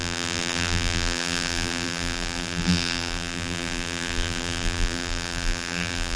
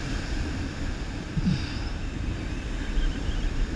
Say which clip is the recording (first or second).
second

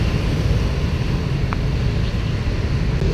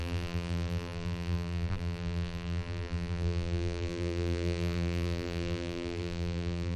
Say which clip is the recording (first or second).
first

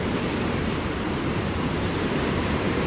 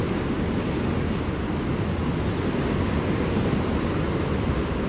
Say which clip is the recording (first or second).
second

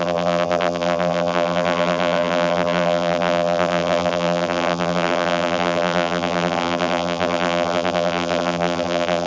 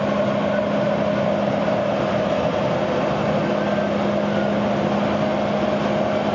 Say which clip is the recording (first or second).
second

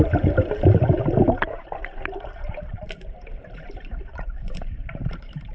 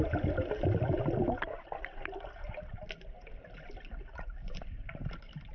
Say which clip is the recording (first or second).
second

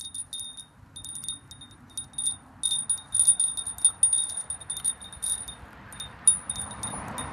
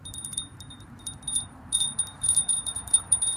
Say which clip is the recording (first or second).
first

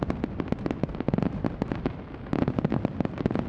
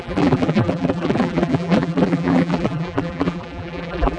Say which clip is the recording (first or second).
first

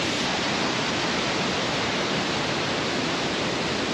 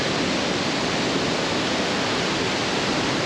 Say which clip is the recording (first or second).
second